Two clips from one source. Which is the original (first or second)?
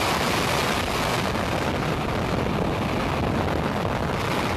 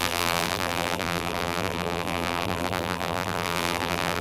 first